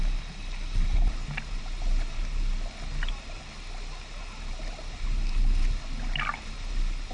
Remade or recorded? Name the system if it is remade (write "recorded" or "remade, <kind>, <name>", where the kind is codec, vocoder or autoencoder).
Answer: recorded